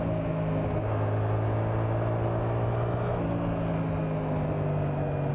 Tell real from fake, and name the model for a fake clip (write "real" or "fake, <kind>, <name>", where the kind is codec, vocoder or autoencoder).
real